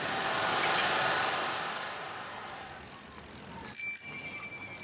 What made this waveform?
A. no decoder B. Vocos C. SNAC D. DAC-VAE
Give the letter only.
A